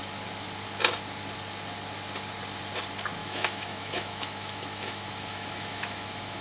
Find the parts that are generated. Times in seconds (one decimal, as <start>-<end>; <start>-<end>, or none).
3.2-6.4

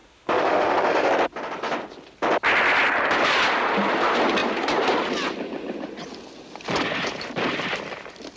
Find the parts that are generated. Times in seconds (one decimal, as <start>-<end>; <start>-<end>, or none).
0.0-1.1